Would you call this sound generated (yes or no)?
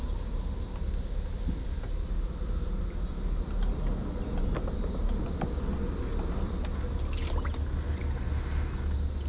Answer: no